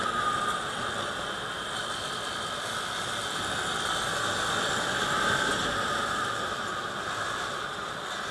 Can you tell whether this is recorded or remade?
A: recorded